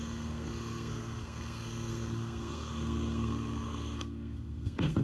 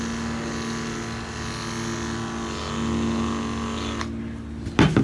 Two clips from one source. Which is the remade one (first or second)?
first